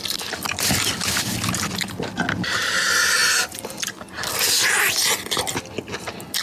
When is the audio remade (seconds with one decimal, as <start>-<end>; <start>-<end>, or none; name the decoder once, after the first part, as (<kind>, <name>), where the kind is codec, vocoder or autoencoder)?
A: none